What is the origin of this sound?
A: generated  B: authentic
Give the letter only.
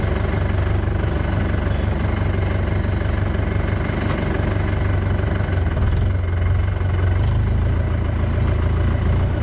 B